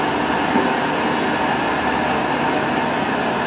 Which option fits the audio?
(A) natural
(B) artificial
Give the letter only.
A